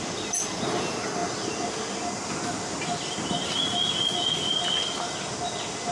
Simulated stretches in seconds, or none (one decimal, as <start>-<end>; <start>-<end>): none